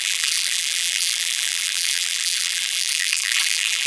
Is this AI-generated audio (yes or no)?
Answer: yes